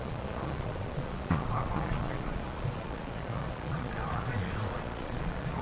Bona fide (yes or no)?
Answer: no